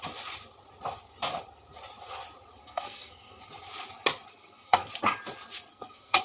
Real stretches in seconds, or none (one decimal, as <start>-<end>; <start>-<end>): 0.0-2.6; 3.4-4.3; 4.9-5.7